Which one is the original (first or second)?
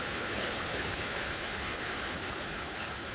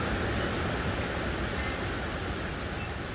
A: second